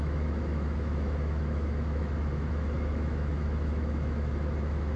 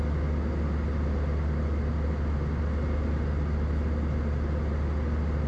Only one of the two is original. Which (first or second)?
second